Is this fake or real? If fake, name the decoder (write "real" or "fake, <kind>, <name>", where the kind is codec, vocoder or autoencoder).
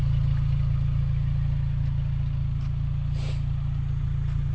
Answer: real